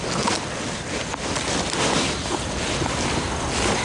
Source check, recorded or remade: recorded